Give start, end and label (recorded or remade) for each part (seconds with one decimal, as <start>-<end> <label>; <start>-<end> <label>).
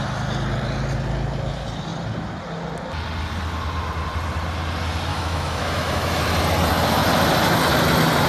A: 0.0-5.1 recorded; 5.1-6.2 remade; 6.2-8.3 recorded